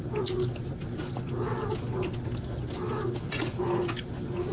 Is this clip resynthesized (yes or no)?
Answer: no